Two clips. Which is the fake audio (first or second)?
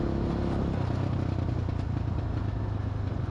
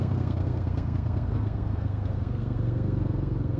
second